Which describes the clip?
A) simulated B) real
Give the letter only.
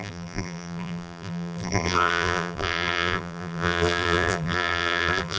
A